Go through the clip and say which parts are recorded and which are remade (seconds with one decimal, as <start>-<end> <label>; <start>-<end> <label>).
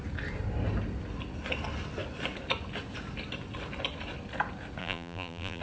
0.0-4.8 recorded; 4.8-5.6 remade